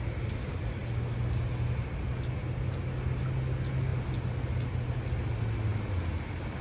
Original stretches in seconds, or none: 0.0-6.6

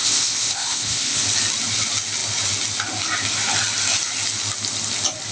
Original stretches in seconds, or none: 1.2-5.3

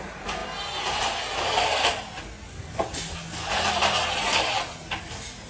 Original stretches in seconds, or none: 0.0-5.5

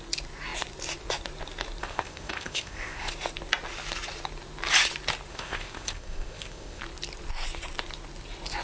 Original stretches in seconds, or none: 0.0-1.8; 3.1-5.3; 6.8-8.6

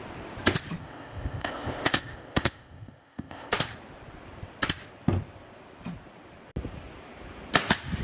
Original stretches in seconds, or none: 0.0-0.8; 3.5-8.0